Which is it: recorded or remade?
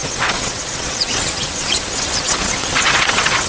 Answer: remade